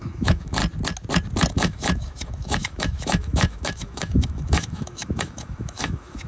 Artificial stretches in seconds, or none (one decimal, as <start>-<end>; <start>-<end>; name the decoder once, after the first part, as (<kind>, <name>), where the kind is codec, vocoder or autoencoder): 0.0-0.6 (autoencoder, DAC-VAE); 1.5-6.3

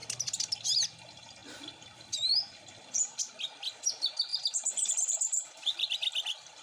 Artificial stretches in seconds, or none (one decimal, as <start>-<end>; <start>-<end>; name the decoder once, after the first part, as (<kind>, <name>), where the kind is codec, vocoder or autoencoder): 4.3-4.9 (vocoder, BigVGAN v2)

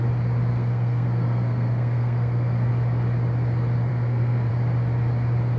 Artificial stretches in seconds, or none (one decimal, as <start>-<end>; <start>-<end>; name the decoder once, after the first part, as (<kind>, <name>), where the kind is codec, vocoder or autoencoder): 0.5-2.7 (codec, SNAC); 3.9-4.5

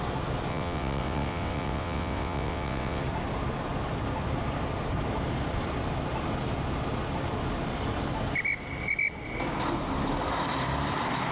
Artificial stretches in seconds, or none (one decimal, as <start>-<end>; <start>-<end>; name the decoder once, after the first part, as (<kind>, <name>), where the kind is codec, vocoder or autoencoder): 0.5-3.0 (vocoder, WaveNeXt)

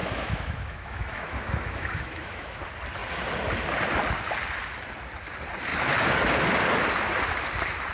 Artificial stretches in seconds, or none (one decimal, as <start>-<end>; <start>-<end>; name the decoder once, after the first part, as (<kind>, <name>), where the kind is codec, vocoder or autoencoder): 0.0-2.6 (autoencoder, DAC-VAE)